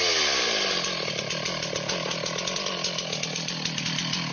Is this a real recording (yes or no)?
yes